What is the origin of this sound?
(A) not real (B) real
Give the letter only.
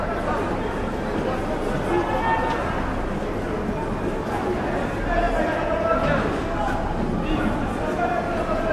B